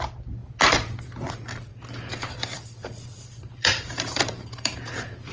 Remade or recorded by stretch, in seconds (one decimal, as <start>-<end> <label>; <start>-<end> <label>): 0.0-1.7 recorded; 1.7-5.3 remade